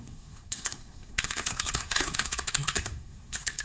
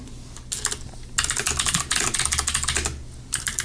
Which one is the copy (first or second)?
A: first